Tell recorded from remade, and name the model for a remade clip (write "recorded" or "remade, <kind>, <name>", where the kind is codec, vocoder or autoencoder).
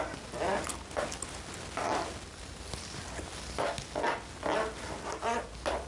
recorded